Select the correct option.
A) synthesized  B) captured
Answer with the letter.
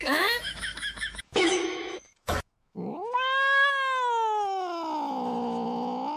A